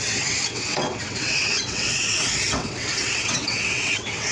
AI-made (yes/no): yes